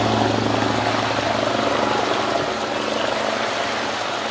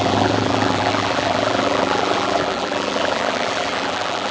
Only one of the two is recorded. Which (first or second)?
first